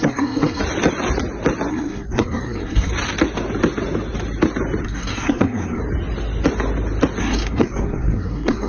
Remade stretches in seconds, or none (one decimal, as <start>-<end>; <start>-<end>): 0.0-0.6; 1.7-2.9; 4.8-5.8; 7.2-8.7